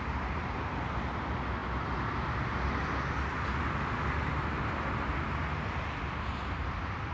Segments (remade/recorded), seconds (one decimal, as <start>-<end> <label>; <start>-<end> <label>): 0.0-7.1 recorded